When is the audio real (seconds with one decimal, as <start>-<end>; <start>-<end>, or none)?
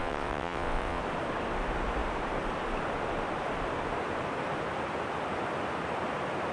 1.0-6.5